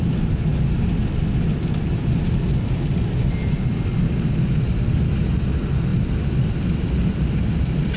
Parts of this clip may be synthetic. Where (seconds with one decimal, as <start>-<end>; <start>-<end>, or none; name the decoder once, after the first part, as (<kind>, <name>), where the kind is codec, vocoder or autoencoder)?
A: none